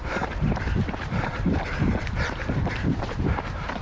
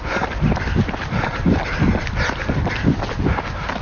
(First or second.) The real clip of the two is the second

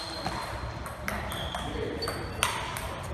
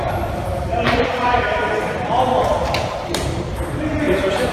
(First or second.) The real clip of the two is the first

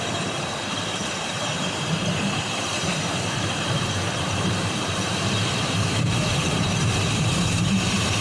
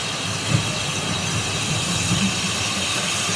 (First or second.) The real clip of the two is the second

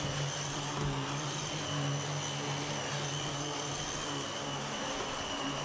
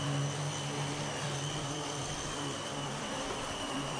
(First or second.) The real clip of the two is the first